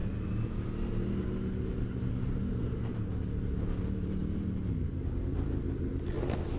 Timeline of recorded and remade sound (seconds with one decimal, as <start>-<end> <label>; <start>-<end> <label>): 0.0-6.6 recorded